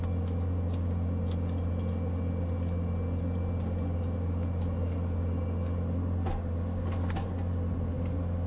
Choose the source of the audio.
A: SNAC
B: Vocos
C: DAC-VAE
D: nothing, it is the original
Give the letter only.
D